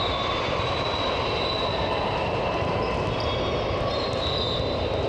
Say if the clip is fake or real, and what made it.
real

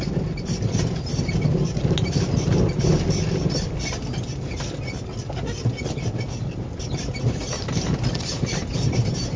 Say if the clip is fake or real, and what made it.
real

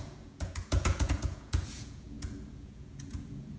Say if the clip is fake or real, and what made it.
fake, vocoder, Vocos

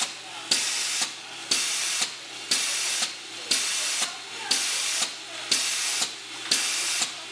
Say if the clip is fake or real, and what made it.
real